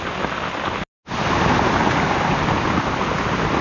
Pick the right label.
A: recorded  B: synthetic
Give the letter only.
A